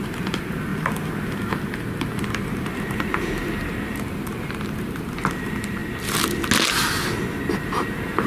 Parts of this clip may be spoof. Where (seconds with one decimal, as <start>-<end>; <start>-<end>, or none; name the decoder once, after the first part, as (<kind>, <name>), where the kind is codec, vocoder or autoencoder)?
0.0-5.8 (vocoder, BigVGAN v2); 7.5-8.3